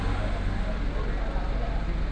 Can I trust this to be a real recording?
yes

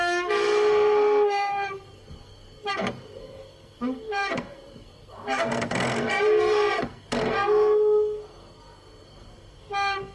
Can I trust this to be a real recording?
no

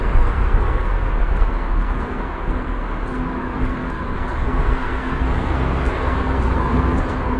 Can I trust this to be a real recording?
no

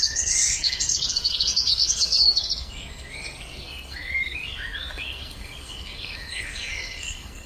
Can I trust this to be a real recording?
no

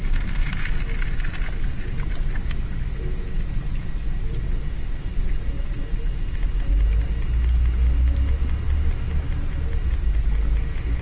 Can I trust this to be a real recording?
yes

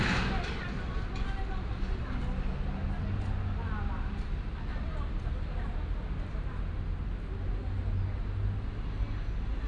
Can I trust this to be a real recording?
yes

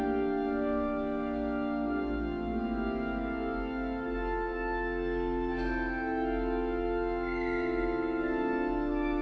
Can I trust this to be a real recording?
yes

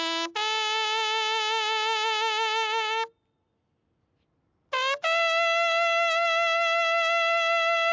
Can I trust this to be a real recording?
yes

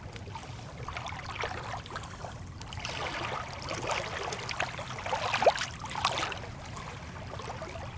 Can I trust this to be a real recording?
yes